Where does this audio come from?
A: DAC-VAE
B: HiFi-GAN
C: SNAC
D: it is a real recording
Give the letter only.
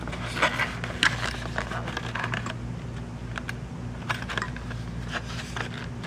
D